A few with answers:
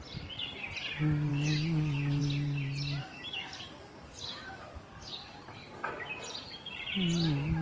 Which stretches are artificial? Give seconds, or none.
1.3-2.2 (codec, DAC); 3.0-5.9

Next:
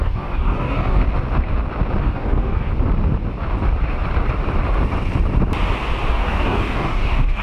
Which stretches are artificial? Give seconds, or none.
0.0-1.0 (codec, DAC); 2.0-2.7; 6.1-7.4

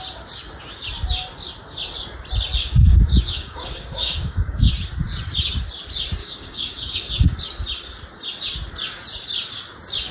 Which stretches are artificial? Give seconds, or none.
2.6-4.7 (codec, DAC); 6.2-7.4

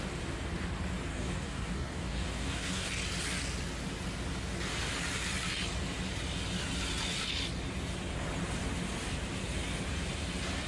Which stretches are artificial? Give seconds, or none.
1.1-2.9 (codec, DAC)